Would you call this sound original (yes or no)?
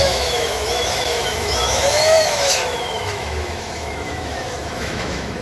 no